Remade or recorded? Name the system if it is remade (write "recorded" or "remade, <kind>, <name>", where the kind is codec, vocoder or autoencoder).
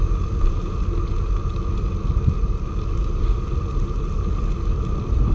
recorded